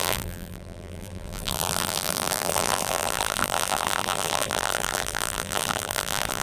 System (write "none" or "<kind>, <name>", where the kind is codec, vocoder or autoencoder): vocoder, BigVGAN v2